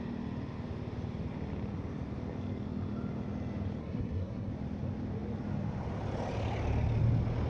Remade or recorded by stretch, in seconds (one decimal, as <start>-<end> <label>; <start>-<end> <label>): 0.0-3.8 recorded; 3.8-4.5 remade; 4.5-7.5 recorded